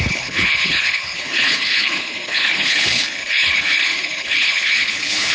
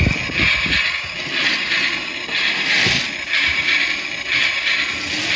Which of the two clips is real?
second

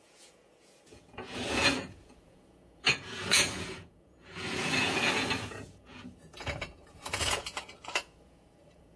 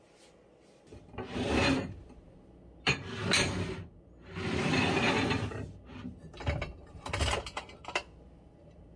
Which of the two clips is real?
second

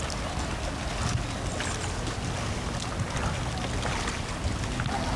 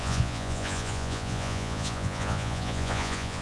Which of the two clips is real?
first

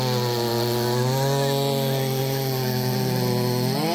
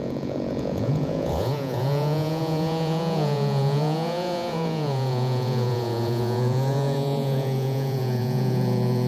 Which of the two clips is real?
first